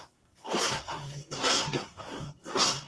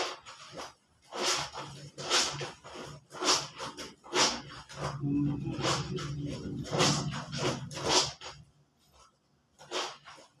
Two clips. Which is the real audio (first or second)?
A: second